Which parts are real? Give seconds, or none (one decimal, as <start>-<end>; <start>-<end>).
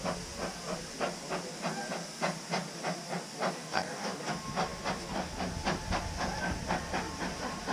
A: 0.0-3.6; 4.2-7.7